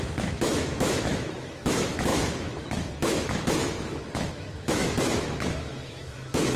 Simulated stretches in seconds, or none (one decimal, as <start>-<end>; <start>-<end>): 0.0-6.6